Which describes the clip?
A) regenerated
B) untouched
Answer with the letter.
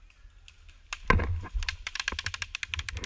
B